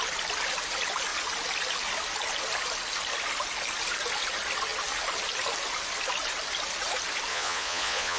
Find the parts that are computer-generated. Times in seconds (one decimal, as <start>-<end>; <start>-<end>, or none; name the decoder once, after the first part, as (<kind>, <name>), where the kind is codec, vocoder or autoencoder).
7.3-8.2 (vocoder, Vocos)